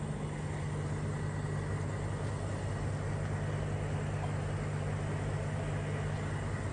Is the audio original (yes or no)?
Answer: yes